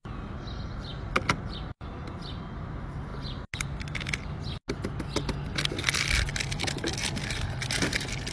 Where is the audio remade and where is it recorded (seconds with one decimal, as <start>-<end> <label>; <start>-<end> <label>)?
0.0-8.3 recorded